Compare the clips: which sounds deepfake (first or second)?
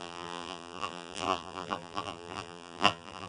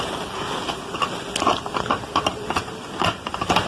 first